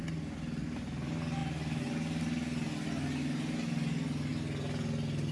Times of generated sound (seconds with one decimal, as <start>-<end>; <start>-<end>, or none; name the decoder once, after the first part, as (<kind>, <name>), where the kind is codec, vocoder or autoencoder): none